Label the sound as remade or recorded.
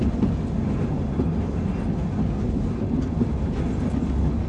recorded